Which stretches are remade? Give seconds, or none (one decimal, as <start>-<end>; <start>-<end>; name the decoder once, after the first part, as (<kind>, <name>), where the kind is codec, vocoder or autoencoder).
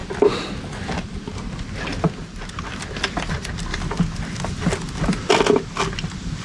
0.0-1.9 (vocoder, BigVGAN v2); 3.3-6.4